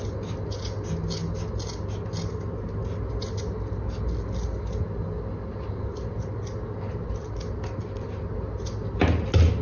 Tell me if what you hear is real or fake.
real